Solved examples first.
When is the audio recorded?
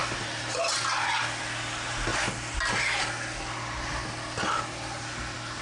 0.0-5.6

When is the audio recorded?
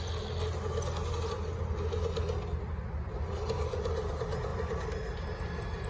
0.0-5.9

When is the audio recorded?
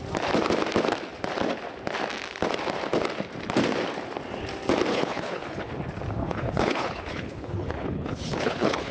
0.0-4.9; 5.7-6.2